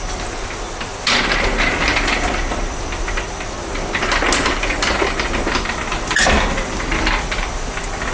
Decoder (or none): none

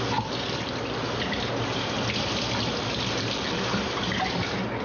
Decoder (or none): none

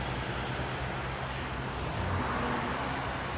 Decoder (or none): none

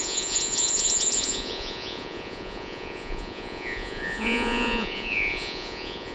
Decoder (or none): vocoder, Vocos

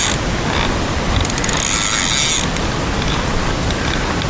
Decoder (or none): none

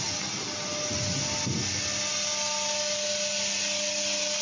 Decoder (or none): none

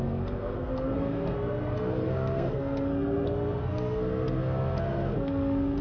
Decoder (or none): codec, SNAC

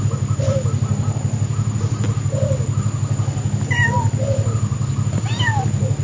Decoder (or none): none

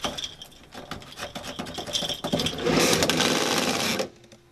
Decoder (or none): none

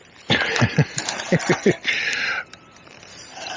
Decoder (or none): vocoder, BigVGAN v2